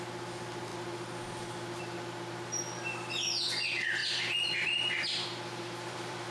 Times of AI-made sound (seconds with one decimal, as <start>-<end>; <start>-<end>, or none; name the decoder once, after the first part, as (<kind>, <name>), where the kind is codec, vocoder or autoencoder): 4.0-6.3 (vocoder, BigVGAN v2)